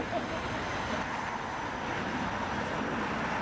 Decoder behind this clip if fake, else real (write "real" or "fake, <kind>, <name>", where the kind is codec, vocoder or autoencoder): real